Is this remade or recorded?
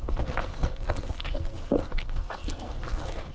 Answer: remade